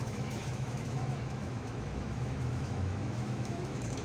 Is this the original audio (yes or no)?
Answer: no